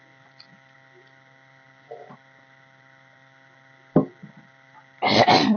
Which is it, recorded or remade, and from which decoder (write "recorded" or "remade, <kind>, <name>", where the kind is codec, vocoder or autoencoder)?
recorded